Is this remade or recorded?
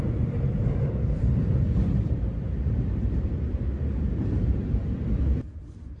remade